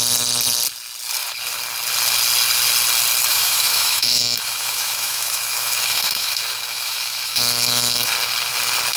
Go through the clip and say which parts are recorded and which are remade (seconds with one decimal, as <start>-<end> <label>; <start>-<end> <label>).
0.0-3.3 recorded; 3.3-8.1 remade; 8.1-9.0 recorded